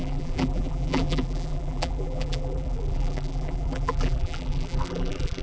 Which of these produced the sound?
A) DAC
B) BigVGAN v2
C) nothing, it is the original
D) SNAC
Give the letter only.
B